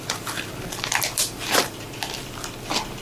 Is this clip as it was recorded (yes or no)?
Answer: yes